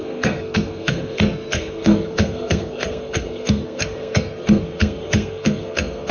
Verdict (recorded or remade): remade